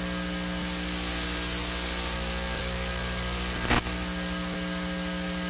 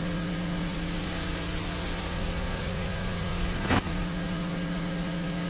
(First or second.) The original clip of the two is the first